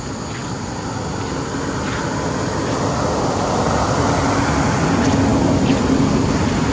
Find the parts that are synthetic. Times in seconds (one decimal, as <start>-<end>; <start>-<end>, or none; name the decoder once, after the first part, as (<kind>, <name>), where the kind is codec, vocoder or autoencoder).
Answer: none